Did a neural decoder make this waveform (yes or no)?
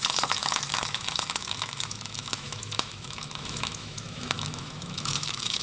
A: yes